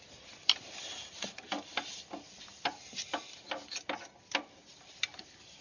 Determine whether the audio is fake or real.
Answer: real